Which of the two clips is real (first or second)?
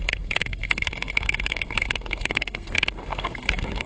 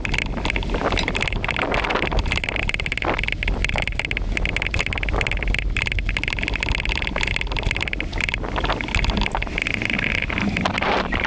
second